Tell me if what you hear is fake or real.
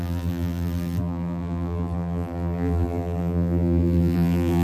fake